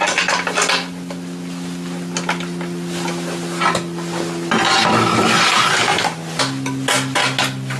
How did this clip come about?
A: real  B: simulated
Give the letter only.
A